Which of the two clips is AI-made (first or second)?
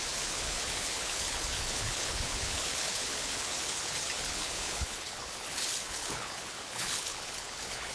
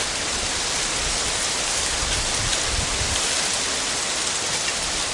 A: first